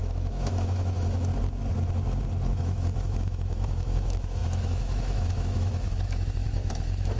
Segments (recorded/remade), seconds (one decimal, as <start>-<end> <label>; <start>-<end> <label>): 0.0-1.3 remade; 1.3-2.5 recorded; 2.5-7.2 remade